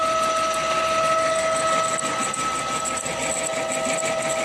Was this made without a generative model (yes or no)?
yes